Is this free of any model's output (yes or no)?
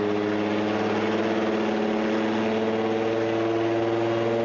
yes